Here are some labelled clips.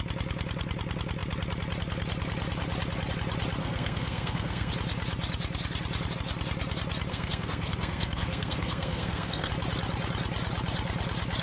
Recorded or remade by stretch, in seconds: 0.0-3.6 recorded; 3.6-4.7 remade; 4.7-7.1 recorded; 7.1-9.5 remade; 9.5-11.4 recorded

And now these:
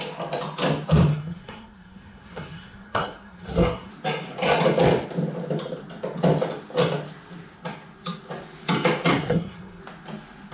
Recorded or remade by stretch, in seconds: 0.0-1.1 recorded; 1.1-3.9 remade; 3.9-9.1 recorded; 9.1-9.8 remade; 9.8-10.5 recorded